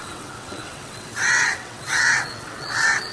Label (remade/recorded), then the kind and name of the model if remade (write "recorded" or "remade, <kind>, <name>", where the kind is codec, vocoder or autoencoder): remade, vocoder, WaveNeXt